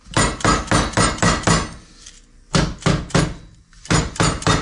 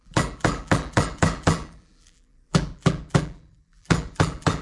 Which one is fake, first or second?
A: second